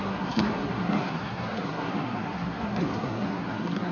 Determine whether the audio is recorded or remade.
remade